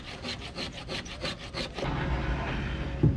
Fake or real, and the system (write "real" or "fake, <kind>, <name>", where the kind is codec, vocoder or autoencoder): real